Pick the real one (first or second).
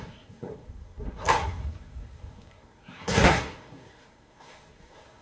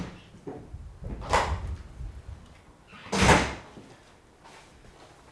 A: second